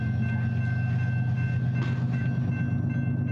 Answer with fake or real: real